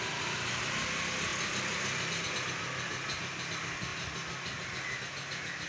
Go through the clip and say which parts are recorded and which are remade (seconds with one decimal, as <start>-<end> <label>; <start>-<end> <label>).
0.0-1.3 recorded; 1.3-2.0 remade; 2.0-3.9 recorded; 3.9-5.0 remade; 5.0-5.7 recorded